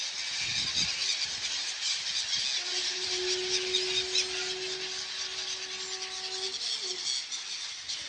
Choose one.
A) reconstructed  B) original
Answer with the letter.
B